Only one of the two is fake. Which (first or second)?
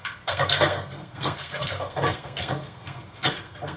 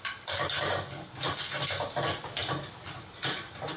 first